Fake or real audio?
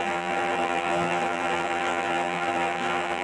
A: fake